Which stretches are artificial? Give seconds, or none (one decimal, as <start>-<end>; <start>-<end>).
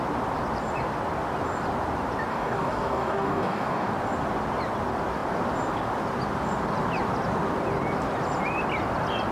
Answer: 2.3-3.9